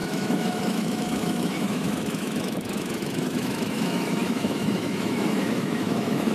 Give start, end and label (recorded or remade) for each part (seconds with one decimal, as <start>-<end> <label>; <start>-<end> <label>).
0.0-6.3 remade